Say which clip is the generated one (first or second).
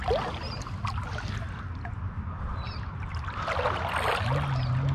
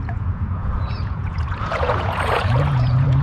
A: second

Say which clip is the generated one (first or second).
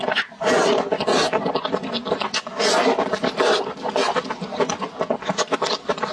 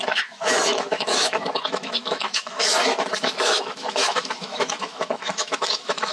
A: second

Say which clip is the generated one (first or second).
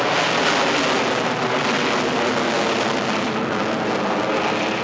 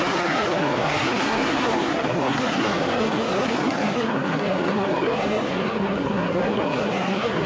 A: second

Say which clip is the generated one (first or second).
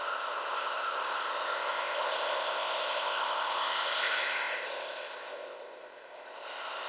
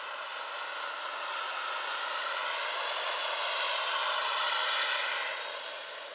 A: first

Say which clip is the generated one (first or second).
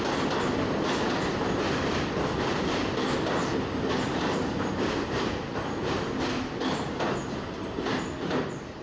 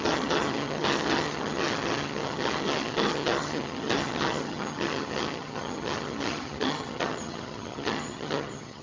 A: second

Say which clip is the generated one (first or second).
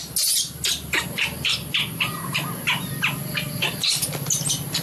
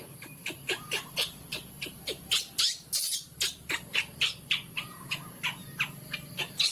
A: second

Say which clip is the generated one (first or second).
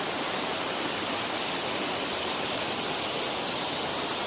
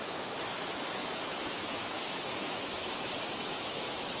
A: second